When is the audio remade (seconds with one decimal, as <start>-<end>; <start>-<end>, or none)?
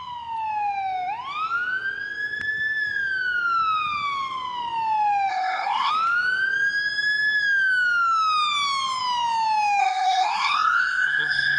5.3-5.9; 9.8-11.6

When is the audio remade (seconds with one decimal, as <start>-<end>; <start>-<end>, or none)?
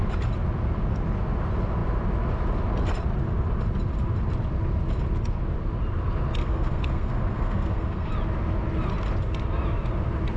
6.4-8.1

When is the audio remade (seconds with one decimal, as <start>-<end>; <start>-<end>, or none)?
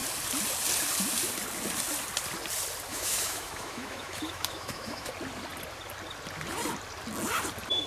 2.9-5.1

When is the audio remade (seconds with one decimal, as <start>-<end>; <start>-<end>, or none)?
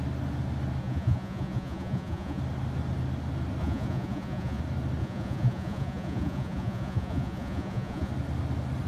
0.8-2.4; 3.6-4.6; 5.0-8.1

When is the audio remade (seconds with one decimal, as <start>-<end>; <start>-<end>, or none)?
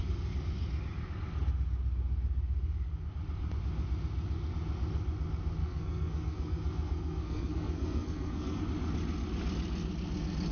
5.6-8.6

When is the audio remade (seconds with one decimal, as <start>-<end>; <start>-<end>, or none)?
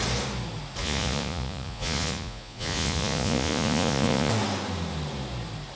0.8-4.3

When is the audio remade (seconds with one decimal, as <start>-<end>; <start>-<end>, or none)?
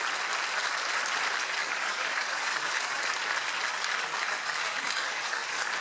1.6-3.0; 3.7-5.8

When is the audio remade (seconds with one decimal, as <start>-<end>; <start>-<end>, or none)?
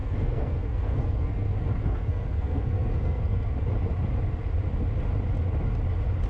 0.0-3.5